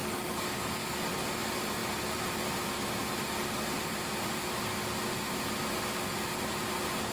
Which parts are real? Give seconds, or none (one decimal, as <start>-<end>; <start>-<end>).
1.0-7.1